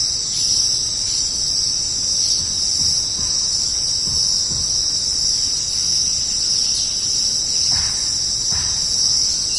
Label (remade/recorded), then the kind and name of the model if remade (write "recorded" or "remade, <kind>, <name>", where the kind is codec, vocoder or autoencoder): recorded